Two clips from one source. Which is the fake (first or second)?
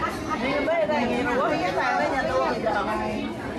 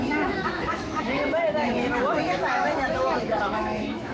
second